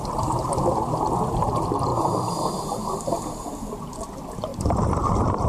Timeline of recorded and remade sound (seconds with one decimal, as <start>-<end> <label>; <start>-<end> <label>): 0.0-1.9 recorded; 1.9-2.5 remade; 2.5-4.5 recorded; 4.5-5.5 remade